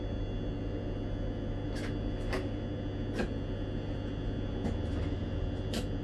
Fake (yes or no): no